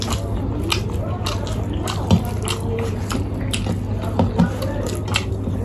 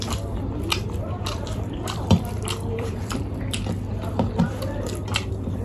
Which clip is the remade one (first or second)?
second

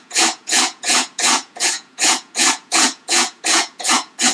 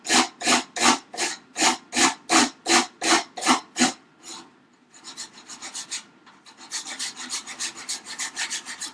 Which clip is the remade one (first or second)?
first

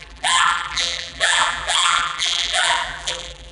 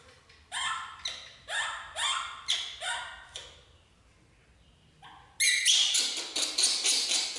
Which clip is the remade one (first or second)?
first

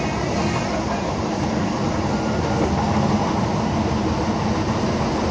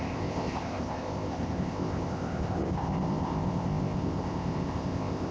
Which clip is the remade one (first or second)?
second